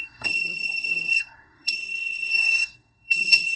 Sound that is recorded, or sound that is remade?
remade